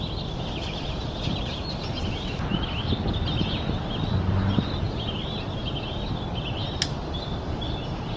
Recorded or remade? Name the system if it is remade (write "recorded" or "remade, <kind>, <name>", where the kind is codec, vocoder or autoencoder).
recorded